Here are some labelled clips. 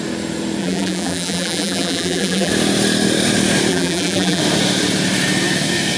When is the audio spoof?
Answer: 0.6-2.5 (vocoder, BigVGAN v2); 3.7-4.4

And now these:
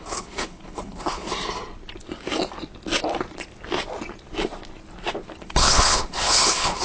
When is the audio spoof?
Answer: 0.0-1.3 (codec, HILCodec); 5.4-6.8

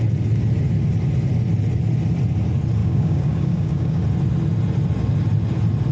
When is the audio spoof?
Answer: 2.8-4.0 (codec, DAC)

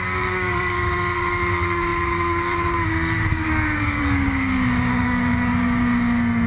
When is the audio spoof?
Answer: 0.0-6.5 (codec, DAC)

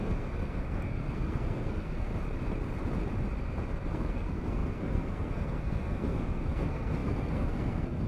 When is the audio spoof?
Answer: 0.0-2.1 (codec, SNAC); 3.9-8.1